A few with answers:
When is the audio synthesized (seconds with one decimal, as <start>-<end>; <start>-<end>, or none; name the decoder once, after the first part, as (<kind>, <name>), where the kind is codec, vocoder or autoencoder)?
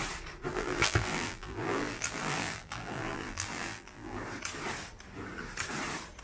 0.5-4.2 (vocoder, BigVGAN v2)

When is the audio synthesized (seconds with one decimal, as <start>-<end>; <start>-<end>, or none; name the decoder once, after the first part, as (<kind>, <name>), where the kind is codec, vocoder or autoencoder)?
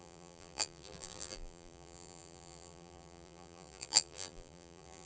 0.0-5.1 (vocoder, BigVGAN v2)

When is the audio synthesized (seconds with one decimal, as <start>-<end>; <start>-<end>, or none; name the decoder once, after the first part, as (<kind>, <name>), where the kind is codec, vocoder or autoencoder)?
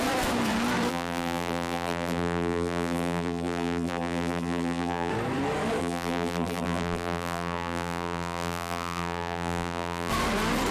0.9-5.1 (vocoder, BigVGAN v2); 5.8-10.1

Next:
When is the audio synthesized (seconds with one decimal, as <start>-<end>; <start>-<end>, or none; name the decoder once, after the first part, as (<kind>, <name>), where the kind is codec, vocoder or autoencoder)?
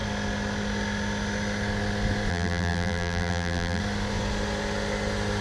2.3-3.8 (vocoder, BigVGAN v2)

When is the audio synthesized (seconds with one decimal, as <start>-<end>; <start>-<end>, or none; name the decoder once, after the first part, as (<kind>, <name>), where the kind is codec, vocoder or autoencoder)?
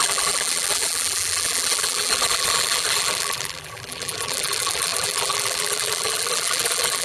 0.0-7.0 (vocoder, BigVGAN v2)